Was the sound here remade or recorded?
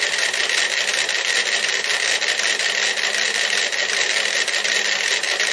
recorded